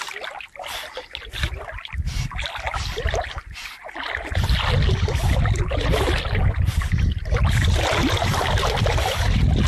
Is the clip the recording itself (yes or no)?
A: yes